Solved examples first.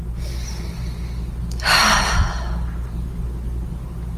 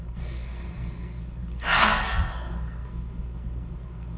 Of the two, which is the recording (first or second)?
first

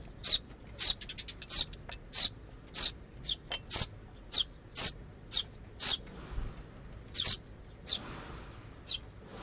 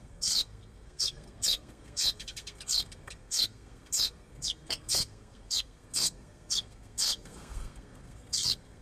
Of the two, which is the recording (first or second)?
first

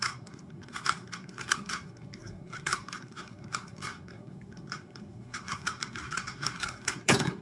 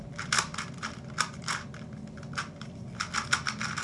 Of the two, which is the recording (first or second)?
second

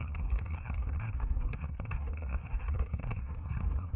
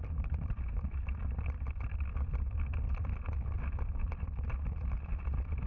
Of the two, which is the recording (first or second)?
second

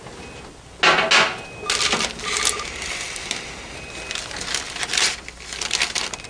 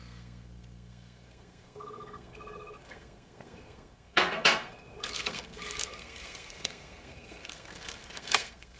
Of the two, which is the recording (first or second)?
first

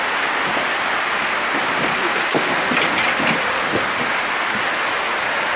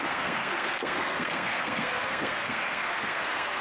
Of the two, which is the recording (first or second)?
first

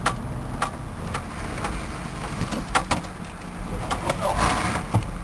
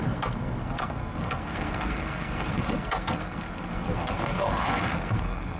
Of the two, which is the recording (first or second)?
first